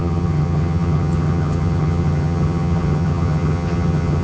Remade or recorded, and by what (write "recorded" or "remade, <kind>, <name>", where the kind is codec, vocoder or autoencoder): remade, vocoder, HiFi-GAN